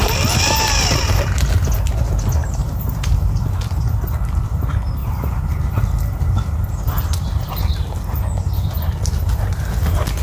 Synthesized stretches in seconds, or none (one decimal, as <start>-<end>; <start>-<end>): 2.4-3.4; 5.0-5.5